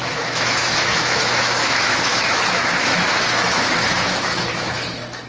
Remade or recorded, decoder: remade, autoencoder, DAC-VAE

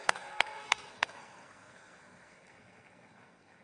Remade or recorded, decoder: remade, codec, SNAC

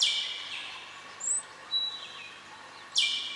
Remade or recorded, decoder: recorded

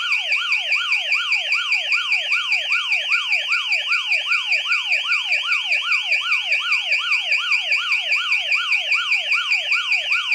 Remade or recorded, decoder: recorded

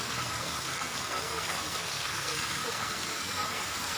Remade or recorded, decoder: remade, codec, SNAC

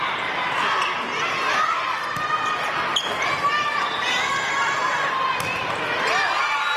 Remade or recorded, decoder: recorded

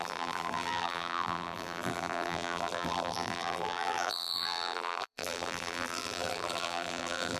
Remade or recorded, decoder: remade, vocoder, BigVGAN v2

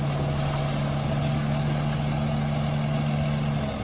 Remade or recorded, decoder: recorded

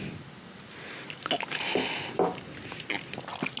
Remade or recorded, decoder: recorded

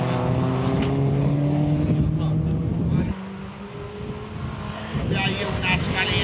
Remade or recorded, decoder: recorded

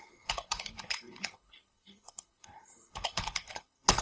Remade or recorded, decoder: remade, codec, HILCodec